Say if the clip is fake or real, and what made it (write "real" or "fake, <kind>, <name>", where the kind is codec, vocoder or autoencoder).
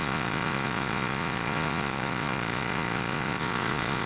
fake, vocoder, Vocos